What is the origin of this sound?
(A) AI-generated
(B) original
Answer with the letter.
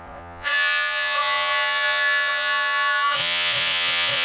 A